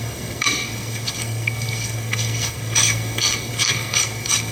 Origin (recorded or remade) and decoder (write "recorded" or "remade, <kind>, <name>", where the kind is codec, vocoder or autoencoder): remade, codec, SNAC